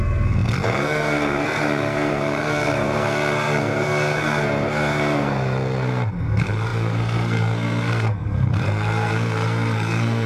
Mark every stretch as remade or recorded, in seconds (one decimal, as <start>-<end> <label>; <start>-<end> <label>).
0.0-10.3 remade